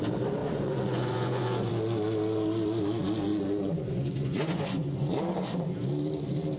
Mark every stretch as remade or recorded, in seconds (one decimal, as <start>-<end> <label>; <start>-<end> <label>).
0.0-0.4 recorded; 0.4-1.7 remade; 1.7-3.3 recorded; 3.3-5.2 remade; 5.2-6.6 recorded